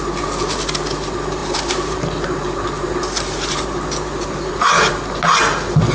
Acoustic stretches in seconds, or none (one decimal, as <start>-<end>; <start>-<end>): 0.0-1.4; 4.9-5.9